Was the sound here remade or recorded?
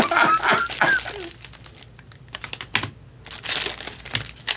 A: recorded